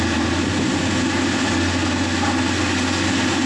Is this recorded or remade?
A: recorded